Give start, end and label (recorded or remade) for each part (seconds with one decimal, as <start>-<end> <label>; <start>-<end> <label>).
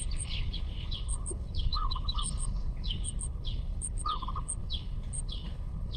0.0-6.0 remade